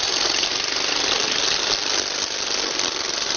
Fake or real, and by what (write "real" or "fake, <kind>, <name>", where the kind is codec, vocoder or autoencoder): real